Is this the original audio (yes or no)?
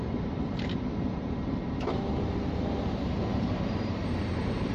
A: no